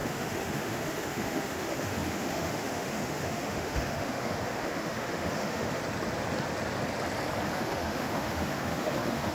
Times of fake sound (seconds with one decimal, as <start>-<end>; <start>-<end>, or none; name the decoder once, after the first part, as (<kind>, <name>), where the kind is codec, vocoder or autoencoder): 0.0-5.8 (autoencoder, DAC-VAE); 7.5-9.3